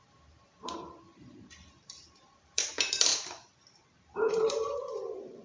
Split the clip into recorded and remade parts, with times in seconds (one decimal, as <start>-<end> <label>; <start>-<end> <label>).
0.0-3.1 remade; 3.1-4.3 recorded; 4.3-5.4 remade